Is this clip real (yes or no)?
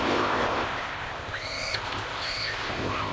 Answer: no